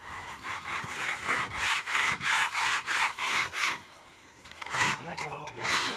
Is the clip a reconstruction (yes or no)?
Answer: yes